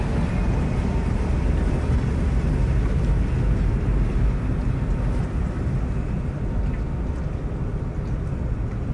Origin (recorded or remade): recorded